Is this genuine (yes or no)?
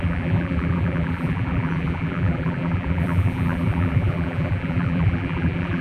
no